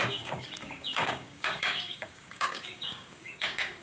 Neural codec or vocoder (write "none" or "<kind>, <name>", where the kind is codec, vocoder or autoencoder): codec, DAC